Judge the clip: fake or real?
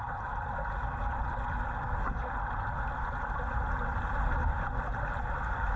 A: real